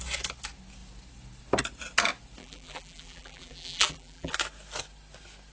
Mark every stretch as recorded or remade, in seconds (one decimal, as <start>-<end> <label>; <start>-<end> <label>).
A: 0.0-2.4 recorded; 2.4-4.3 remade; 4.3-5.5 recorded